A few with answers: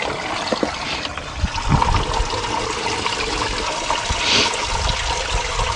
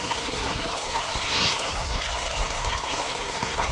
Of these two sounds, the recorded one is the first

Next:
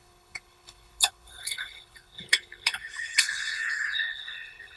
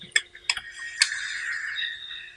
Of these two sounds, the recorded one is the second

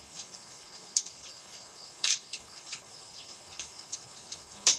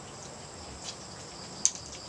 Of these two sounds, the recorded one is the second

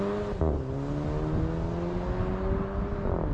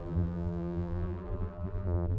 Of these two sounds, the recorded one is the first